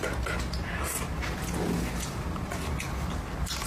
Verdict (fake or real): real